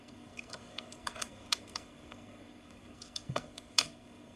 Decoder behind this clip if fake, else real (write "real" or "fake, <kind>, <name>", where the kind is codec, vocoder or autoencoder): fake, codec, SNAC